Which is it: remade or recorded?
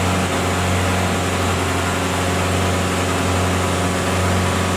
recorded